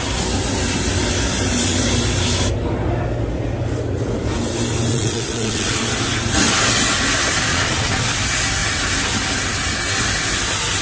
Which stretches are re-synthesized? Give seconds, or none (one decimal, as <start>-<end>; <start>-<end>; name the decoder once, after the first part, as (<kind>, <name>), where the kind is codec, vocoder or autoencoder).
4.9-5.8 (vocoder, Vocos); 7.5-8.0